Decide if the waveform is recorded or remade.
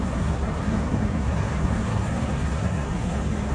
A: remade